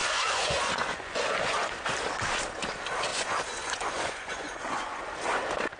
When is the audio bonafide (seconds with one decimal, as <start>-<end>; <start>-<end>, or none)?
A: 1.7-3.1; 5.0-5.8